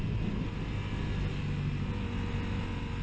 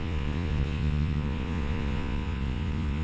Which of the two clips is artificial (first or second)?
second